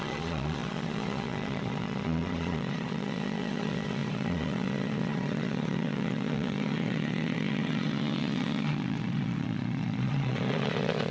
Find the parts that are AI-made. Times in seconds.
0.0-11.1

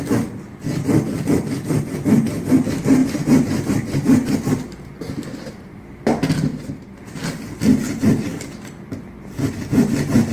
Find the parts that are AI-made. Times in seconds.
3.0-5.8; 6.5-7.0

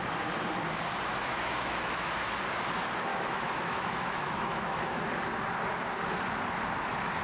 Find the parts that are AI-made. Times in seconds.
1.1-2.1; 3.1-5.0